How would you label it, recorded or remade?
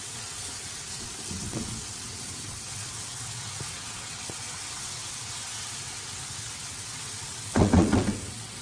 remade